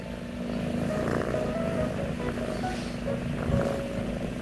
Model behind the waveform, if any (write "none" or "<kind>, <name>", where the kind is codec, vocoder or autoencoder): none